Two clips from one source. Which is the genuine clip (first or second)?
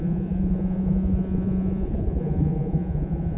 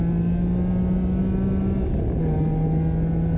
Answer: second